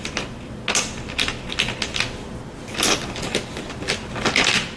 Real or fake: real